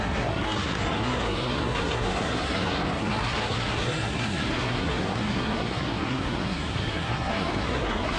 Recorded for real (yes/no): no